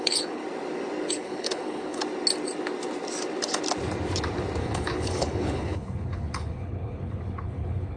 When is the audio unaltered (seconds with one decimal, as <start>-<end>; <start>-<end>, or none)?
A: 0.4-1.1; 2.0-4.6